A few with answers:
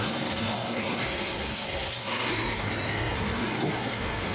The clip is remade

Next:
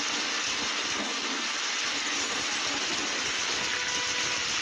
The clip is recorded